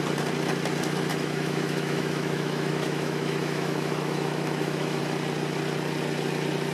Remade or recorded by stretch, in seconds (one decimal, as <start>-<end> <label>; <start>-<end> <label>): 0.0-1.1 recorded; 1.1-5.0 remade; 5.0-6.7 recorded